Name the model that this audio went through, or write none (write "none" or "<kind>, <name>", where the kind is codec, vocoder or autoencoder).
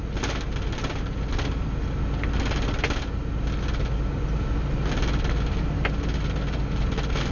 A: none